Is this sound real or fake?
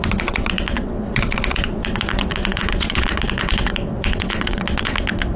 fake